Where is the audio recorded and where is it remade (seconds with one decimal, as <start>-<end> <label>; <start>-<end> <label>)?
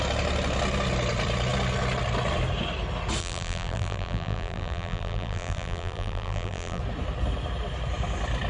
0.0-3.2 recorded; 3.2-6.8 remade; 6.8-8.5 recorded